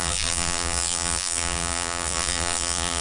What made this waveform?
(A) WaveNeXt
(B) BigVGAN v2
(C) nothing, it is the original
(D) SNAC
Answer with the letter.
B